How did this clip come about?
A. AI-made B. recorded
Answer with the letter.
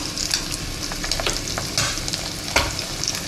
B